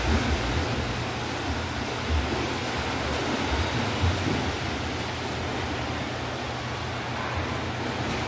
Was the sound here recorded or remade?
recorded